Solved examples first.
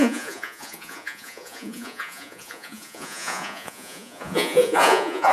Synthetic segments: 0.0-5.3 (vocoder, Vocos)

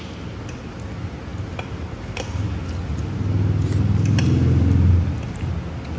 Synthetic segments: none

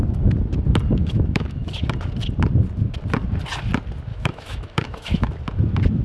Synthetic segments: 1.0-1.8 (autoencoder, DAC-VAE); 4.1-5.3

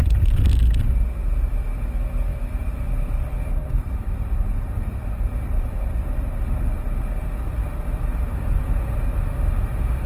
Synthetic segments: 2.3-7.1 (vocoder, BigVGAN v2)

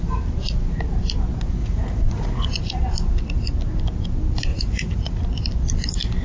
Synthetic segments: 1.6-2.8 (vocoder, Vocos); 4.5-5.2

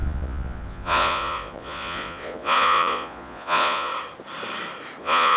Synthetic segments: 0.0-3.9 (vocoder, Vocos); 5.0-5.4